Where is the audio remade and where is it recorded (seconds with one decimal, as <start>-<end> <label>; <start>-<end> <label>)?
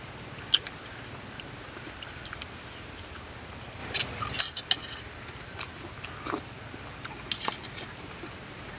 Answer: 0.0-8.8 recorded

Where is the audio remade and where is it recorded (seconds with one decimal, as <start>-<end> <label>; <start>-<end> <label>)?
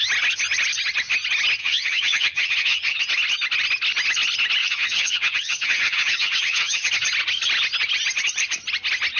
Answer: 0.0-1.6 recorded; 1.6-3.0 remade; 3.0-4.6 recorded; 4.6-6.9 remade; 6.9-9.2 recorded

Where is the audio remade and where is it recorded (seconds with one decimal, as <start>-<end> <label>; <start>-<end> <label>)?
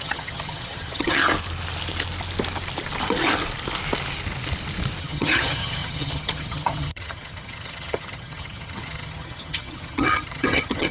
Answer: 0.0-1.2 remade; 1.2-5.0 recorded; 5.0-10.9 remade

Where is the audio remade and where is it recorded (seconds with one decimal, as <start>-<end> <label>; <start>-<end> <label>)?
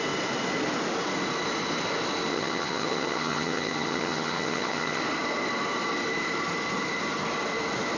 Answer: 0.0-2.3 recorded; 2.3-5.0 remade; 5.0-8.0 recorded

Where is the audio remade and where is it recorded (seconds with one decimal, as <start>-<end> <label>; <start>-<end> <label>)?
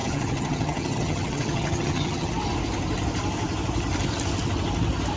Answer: 0.0-2.3 remade; 2.3-5.2 recorded